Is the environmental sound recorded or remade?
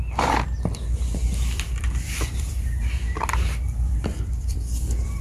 remade